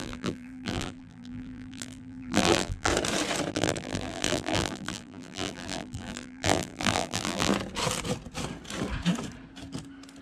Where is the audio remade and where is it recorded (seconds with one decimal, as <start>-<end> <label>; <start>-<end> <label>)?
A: 0.0-2.9 remade; 2.9-3.5 recorded; 3.5-7.5 remade; 7.5-10.2 recorded